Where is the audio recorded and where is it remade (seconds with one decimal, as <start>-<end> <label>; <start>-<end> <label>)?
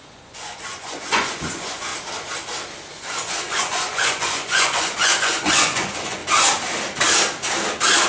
0.0-1.9 remade; 1.9-2.9 recorded; 2.9-6.2 remade; 6.2-8.1 recorded